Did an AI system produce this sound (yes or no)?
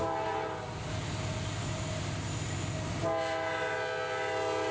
no